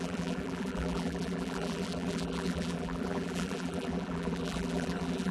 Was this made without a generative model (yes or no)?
no